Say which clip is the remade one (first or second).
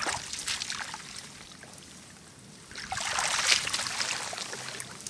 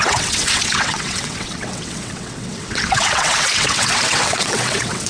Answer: second